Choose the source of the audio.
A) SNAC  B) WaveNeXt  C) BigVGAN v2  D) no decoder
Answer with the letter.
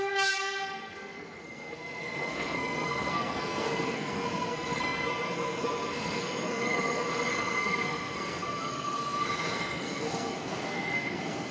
A